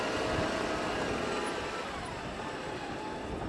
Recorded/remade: recorded